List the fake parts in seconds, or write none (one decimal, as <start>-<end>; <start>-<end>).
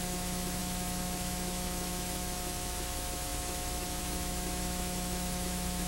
0.0-5.9